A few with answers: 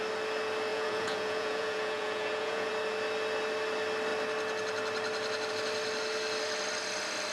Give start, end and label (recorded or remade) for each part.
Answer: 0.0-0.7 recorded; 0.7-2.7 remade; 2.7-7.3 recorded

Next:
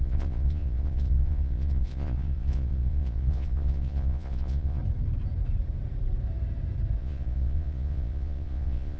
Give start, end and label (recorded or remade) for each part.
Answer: 0.0-4.8 remade; 4.8-7.0 recorded; 7.0-9.0 remade

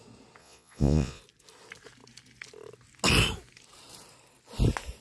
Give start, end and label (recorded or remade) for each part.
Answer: 0.0-0.4 recorded; 0.4-1.2 remade; 1.2-5.0 recorded

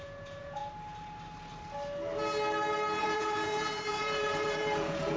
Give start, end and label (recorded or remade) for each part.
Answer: 0.0-0.6 remade; 0.6-3.0 recorded; 3.0-5.2 remade

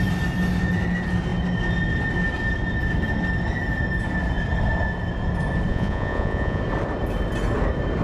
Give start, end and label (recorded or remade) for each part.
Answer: 0.0-5.7 recorded; 5.7-6.6 remade; 6.6-8.0 recorded